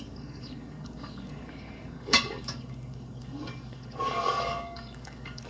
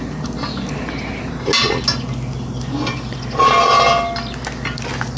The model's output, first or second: first